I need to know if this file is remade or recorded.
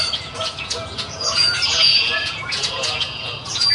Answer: remade